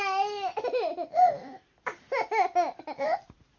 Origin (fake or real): real